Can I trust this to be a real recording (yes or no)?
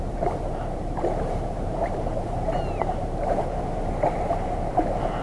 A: no